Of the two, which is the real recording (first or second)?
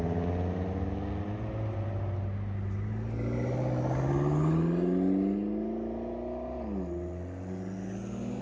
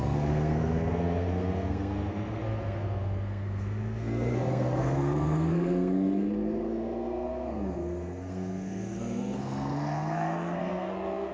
first